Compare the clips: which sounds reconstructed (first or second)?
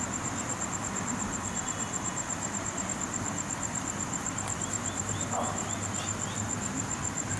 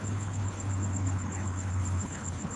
second